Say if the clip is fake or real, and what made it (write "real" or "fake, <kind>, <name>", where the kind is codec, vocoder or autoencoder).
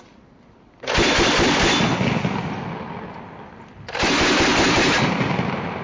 real